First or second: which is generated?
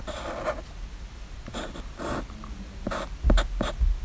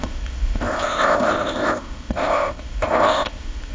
second